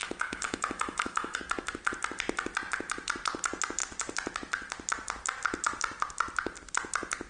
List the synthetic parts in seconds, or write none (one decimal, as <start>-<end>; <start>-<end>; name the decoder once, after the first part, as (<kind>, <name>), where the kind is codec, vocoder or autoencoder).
0.0-1.4 (autoencoder, DAC-VAE)